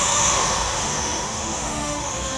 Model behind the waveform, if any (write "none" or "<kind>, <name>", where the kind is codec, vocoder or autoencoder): autoencoder, DAC-VAE